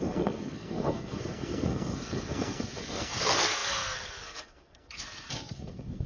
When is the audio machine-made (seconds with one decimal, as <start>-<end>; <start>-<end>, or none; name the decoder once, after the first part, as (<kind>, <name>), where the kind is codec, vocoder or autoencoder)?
0.0-6.1 (codec, SNAC)